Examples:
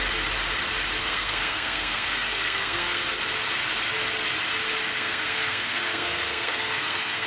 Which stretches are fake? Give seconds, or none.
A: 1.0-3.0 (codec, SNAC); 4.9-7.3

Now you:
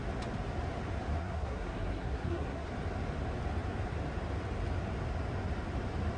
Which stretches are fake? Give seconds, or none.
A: 1.2-2.7 (codec, SNAC)

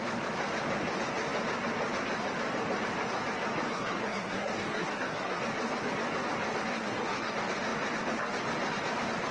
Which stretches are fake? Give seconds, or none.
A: 3.7-5.4 (codec, SNAC); 6.7-7.3

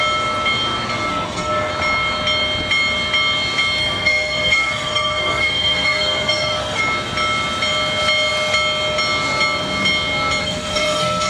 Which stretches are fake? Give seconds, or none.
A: 1.1-1.7 (codec, SNAC); 3.8-6.8; 10.4-11.3

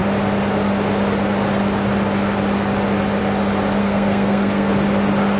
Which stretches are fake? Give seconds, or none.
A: 3.8-4.7 (codec, SNAC)

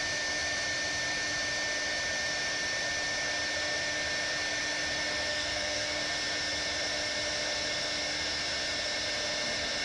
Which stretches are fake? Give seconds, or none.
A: 5.3-6.0 (codec, SNAC)